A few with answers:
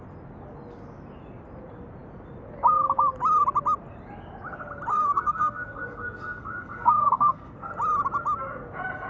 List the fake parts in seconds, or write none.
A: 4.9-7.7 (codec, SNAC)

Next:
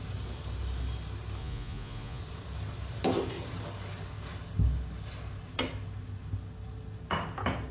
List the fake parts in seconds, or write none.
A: 1.4-2.2 (vocoder, Vocos)

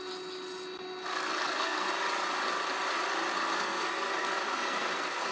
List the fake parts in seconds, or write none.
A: 1.1-1.9 (codec, SNAC); 3.5-5.3

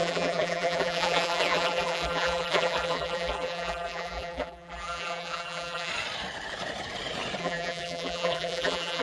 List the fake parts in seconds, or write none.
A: 0.0-5.9 (vocoder, BigVGAN v2); 7.4-9.0

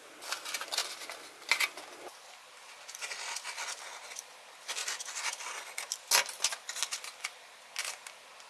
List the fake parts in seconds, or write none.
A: none

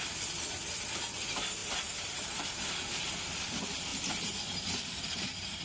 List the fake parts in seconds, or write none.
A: 1.6-2.7 (vocoder, BigVGAN v2)

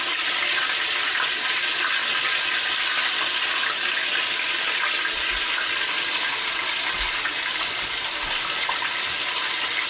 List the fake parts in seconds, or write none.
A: none